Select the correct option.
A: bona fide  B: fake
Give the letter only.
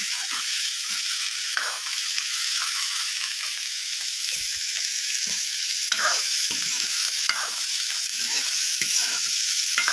B